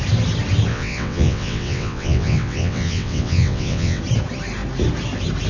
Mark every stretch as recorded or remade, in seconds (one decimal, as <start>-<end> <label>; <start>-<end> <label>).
0.0-0.7 recorded; 0.7-4.0 remade; 4.0-5.5 recorded